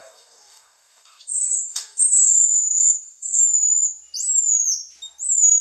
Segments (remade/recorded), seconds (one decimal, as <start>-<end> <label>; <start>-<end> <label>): 0.0-3.4 remade; 3.4-5.6 recorded

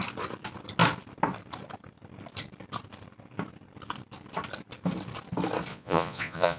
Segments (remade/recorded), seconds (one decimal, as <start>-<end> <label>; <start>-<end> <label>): 0.0-5.7 recorded; 5.7-6.6 remade

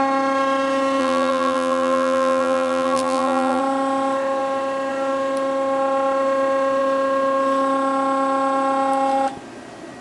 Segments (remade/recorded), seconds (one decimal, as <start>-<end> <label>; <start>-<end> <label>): 0.0-1.0 recorded; 1.0-3.6 remade; 3.6-10.0 recorded